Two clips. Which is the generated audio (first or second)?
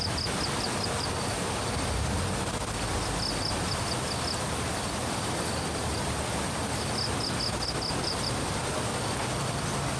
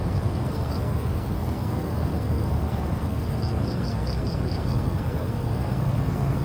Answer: second